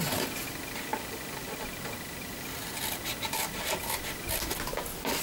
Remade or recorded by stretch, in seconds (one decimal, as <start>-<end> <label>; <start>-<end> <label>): 0.0-5.2 recorded